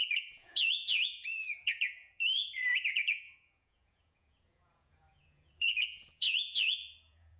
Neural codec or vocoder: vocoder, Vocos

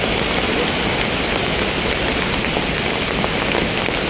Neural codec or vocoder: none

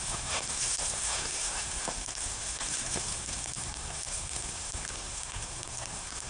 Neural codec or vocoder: codec, SNAC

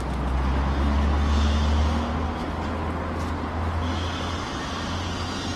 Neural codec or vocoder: none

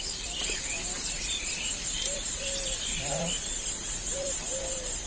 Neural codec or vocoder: vocoder, BigVGAN v2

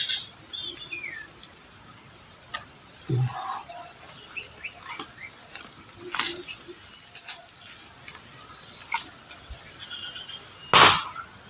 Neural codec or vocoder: none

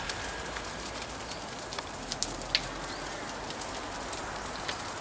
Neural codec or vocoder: none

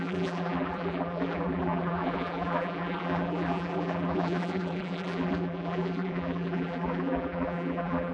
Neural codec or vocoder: vocoder, BigVGAN v2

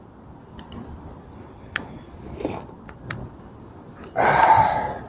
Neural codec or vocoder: none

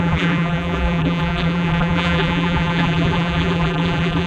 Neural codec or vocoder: vocoder, BigVGAN v2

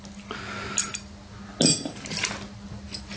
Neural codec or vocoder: none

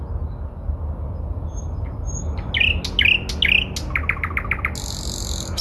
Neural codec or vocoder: none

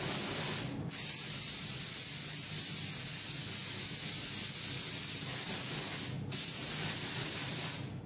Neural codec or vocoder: none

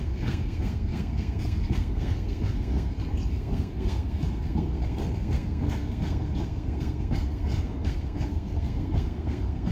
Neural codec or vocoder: codec, SNAC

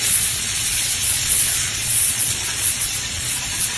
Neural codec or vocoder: vocoder, Vocos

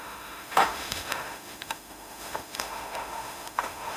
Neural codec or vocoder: autoencoder, DAC-VAE